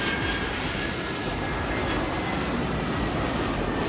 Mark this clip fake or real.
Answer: real